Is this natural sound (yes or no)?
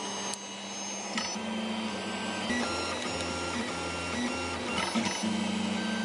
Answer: yes